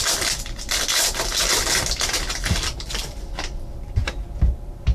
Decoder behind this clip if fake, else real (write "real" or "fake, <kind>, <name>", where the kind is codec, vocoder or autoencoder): real